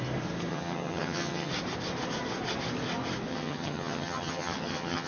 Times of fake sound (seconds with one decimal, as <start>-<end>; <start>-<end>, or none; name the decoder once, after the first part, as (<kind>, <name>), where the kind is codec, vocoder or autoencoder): 0.5-1.5 (vocoder, HiFi-GAN); 3.3-5.1